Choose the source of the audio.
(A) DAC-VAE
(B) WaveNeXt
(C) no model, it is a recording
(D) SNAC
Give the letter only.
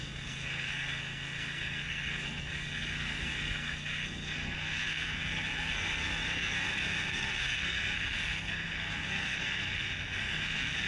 D